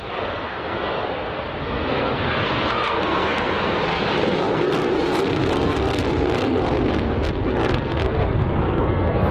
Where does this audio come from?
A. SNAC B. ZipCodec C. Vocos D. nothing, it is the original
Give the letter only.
A